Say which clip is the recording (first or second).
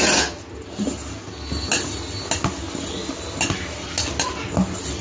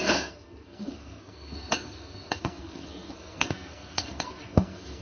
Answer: first